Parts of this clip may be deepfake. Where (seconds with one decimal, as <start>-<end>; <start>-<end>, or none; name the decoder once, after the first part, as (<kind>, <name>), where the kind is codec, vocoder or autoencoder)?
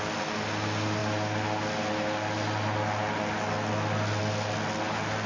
none